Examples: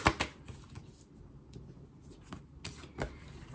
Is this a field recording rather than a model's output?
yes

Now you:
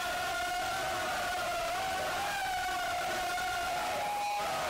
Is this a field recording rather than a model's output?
yes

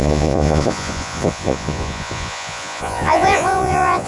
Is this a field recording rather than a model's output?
no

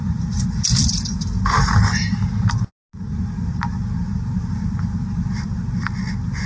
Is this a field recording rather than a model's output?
yes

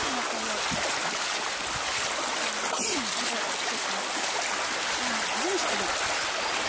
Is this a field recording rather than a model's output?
yes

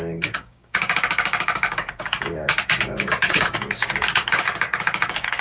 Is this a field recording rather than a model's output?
no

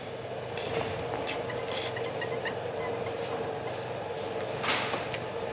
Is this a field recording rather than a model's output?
yes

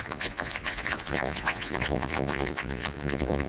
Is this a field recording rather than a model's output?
no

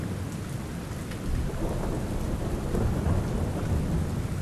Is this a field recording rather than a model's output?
yes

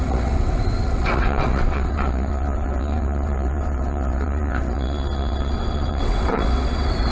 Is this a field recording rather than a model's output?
no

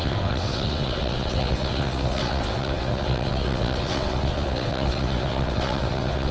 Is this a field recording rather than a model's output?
no